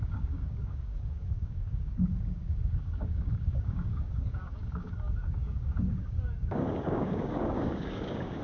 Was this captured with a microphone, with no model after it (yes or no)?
no